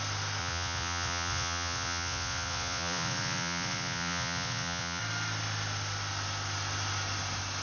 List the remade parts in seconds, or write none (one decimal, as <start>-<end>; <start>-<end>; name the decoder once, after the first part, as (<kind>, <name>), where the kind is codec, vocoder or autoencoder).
0.4-5.0 (vocoder, Vocos)